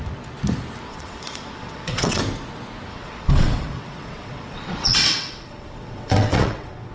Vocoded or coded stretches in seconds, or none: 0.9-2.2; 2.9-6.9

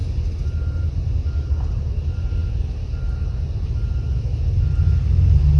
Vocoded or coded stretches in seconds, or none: none

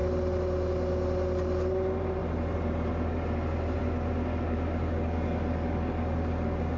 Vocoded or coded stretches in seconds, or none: 4.3-6.8

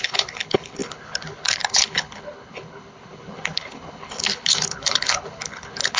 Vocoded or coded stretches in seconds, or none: 0.0-6.0

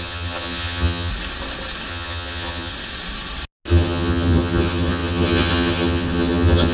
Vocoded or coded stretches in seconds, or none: 0.0-1.1; 1.9-2.7; 3.7-6.7